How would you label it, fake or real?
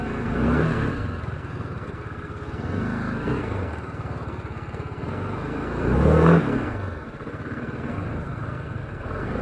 fake